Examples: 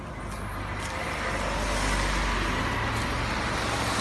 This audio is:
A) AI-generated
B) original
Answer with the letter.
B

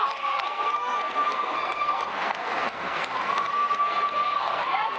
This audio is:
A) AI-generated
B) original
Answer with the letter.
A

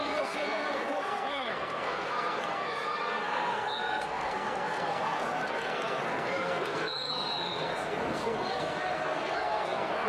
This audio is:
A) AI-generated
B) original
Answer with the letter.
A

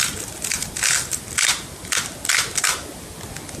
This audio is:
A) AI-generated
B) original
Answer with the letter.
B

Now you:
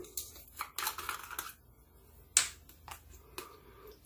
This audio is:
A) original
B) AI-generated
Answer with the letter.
A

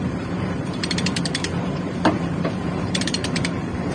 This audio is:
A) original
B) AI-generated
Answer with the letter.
B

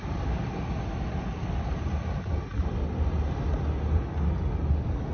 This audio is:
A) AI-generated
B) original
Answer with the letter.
B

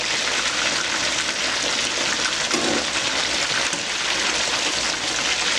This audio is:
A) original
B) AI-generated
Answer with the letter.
A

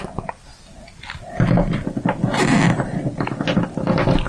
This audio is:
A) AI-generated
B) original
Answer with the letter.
B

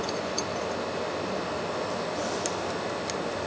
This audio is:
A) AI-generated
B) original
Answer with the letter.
B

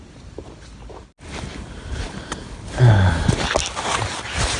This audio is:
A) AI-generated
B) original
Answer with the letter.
B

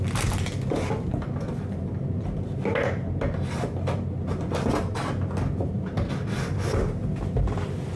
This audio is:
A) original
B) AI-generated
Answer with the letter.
A